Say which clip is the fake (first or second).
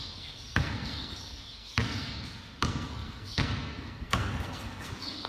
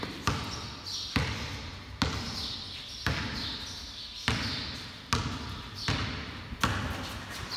first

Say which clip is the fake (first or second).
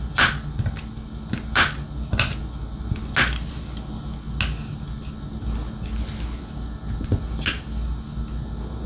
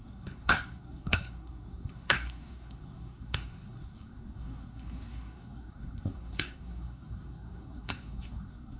second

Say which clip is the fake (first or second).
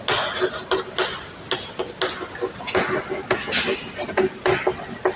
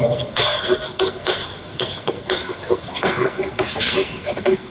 second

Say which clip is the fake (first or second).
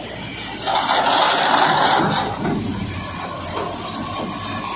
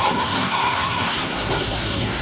second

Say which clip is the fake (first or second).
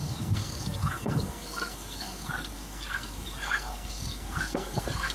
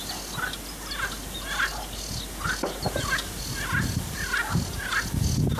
first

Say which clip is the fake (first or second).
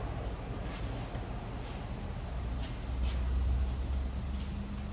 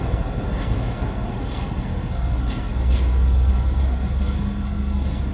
second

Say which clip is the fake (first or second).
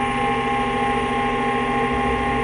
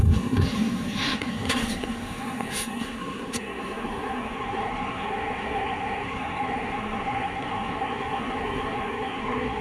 second